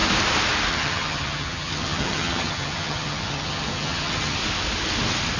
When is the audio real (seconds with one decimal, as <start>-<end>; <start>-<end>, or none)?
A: 0.0-0.7; 4.4-5.4